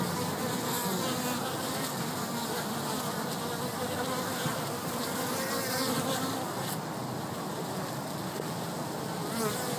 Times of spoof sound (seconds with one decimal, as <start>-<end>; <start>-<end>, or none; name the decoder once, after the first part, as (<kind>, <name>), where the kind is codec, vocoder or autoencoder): none